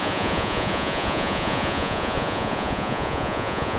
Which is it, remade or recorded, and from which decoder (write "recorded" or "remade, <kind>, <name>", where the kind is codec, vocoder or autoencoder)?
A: remade, vocoder, Vocos